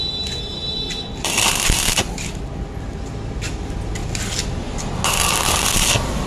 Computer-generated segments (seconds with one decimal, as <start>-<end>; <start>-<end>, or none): none